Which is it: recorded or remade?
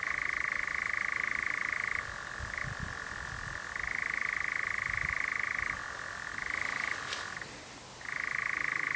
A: recorded